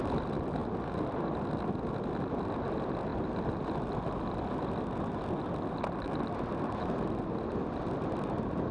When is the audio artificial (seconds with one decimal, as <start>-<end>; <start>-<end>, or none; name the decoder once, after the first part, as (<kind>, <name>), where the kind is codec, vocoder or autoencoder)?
none